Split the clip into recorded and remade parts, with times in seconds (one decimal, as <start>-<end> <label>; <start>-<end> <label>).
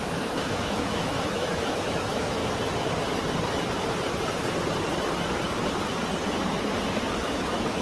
0.0-2.4 remade; 2.4-7.1 recorded; 7.1-7.8 remade